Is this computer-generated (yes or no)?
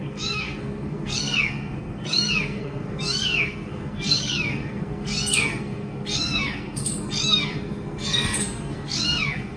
yes